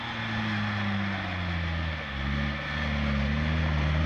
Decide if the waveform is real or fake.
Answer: real